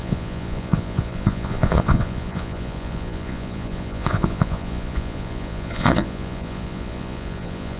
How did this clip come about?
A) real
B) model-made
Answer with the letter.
B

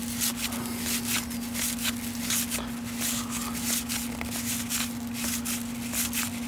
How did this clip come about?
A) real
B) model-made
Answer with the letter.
A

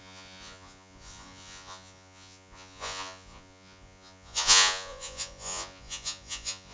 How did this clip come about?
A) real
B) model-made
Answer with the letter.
B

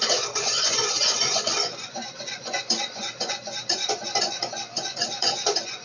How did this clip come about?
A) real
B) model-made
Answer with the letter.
B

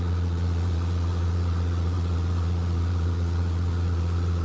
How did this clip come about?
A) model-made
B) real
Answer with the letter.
A